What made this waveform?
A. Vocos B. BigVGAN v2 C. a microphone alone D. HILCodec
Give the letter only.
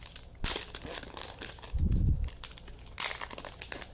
C